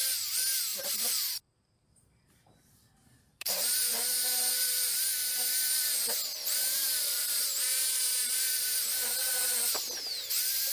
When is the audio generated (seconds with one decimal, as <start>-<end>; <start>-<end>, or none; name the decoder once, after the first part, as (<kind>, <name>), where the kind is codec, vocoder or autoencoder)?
0.7-4.0 (vocoder, BigVGAN v2); 6.6-7.4